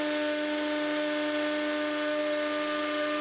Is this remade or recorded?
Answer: recorded